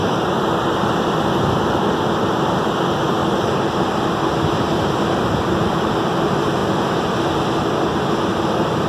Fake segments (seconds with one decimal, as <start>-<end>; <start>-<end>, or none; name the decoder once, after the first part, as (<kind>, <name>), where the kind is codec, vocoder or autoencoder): 3.2-5.1 (vocoder, BigVGAN v2)